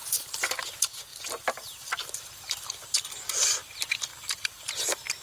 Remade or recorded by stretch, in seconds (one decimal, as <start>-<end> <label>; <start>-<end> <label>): 0.0-0.6 remade; 0.6-1.1 recorded; 1.1-1.9 remade; 1.9-5.2 recorded